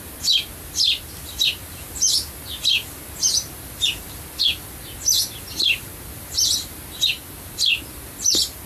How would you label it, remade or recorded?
recorded